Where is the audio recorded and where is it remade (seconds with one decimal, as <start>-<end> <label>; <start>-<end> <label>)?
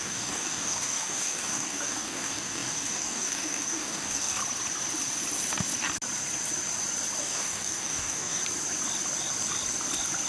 0.0-4.4 remade; 4.4-7.2 recorded; 7.2-8.4 remade; 8.4-10.3 recorded